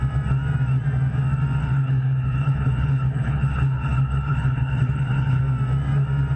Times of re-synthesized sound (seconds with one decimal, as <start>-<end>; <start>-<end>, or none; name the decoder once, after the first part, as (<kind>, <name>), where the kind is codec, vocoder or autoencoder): 1.6-5.4 (codec, HILCodec)